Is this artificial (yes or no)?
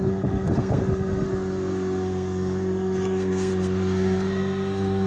yes